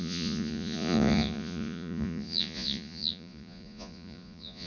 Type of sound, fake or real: fake